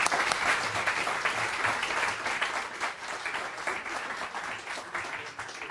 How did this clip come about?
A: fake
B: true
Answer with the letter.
B